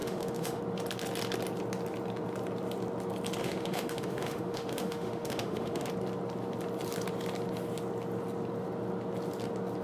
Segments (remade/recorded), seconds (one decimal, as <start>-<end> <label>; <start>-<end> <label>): 0.0-0.6 remade; 0.6-3.4 recorded; 3.4-5.9 remade; 5.9-9.8 recorded